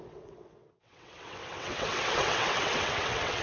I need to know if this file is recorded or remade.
remade